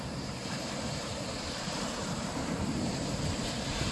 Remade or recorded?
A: remade